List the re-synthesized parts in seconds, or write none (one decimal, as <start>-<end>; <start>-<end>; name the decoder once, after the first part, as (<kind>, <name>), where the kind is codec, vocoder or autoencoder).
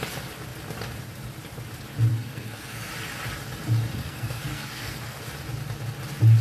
2.1-2.9 (codec, SNAC); 4.0-5.2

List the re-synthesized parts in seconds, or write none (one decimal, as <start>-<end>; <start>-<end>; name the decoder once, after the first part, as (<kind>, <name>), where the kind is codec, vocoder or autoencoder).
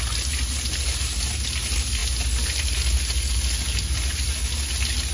none